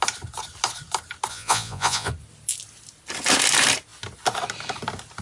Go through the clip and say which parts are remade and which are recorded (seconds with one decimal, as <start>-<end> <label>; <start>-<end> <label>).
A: 0.0-1.3 recorded; 1.3-2.1 remade; 2.1-5.2 recorded